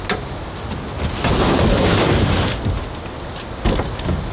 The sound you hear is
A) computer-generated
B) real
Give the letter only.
B